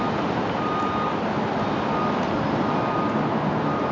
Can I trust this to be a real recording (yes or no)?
yes